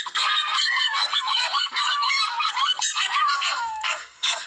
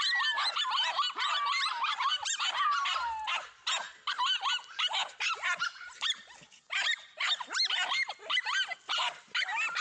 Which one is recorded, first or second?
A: second